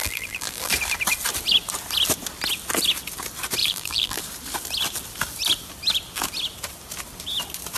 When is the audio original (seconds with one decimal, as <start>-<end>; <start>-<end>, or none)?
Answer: 0.7-3.6; 4.2-7.8